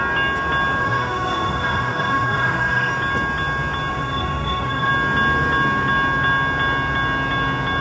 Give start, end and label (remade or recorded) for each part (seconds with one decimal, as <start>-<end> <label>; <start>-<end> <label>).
0.0-0.8 recorded; 0.8-2.9 remade; 2.9-3.9 recorded; 3.9-4.9 remade; 4.9-7.8 recorded